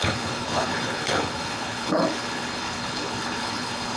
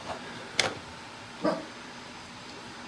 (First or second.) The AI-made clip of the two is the first